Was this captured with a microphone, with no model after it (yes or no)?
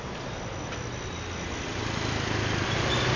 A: yes